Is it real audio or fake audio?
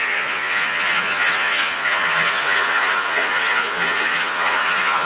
fake